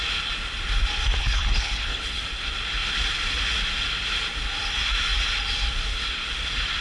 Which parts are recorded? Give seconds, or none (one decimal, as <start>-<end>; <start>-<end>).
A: 0.0-1.2; 2.2-6.8